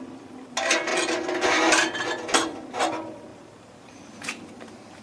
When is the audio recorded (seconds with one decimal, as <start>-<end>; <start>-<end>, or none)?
0.0-3.3